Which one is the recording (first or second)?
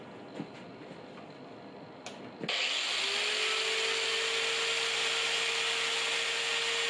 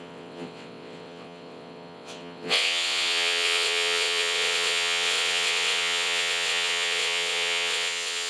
first